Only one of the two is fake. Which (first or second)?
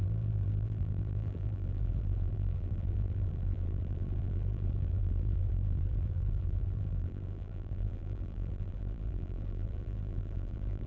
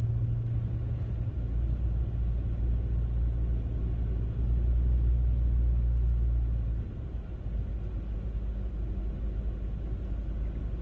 first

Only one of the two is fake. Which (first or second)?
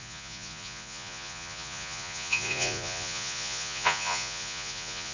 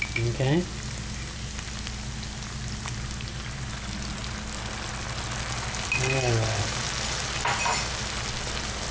first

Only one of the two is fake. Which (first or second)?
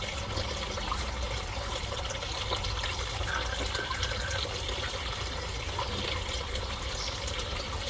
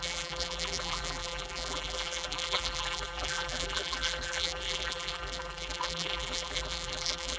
second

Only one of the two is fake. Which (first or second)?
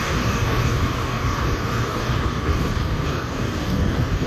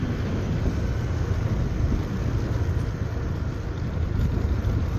first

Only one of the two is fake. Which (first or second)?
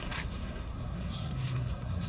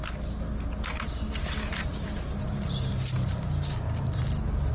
first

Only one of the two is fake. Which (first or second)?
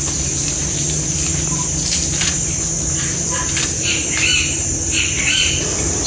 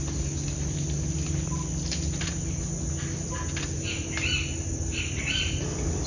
first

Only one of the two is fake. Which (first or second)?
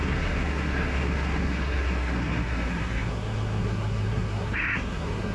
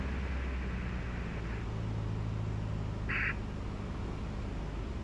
first